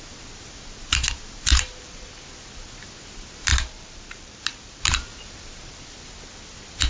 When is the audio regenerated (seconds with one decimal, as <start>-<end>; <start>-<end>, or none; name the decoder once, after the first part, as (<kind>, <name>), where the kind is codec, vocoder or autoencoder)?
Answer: 1.5-2.2 (vocoder, BigVGAN v2); 3.5-4.9